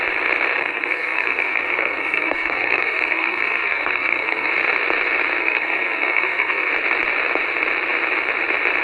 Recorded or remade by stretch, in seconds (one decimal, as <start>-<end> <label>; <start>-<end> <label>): 0.0-0.6 recorded; 0.6-4.5 remade; 4.5-5.4 recorded; 5.4-6.7 remade; 6.7-8.8 recorded